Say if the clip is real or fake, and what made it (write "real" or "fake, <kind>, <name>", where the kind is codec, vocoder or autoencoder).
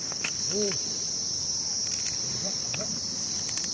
real